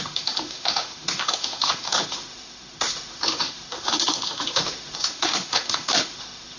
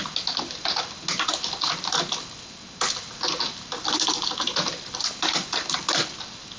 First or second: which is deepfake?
first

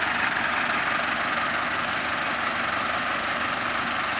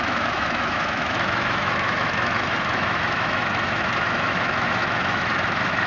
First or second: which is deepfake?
second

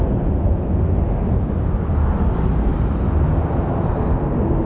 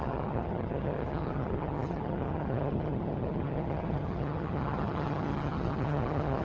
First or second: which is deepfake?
second